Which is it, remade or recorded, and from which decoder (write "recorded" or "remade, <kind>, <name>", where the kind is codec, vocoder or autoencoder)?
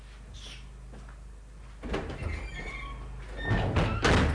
recorded